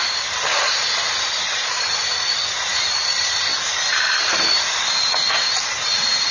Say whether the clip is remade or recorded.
recorded